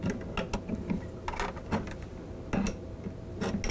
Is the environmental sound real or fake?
real